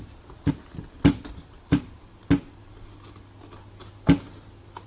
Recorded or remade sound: recorded